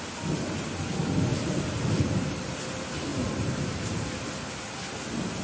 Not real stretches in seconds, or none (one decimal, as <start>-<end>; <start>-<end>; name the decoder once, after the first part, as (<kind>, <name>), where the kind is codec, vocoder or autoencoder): 1.3-2.0 (vocoder, BigVGAN v2); 3.1-4.2